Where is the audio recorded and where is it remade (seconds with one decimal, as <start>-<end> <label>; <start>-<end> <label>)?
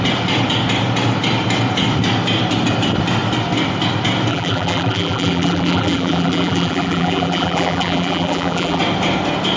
0.0-4.3 recorded; 4.3-8.8 remade; 8.8-9.6 recorded